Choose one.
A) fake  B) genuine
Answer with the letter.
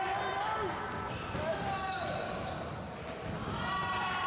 B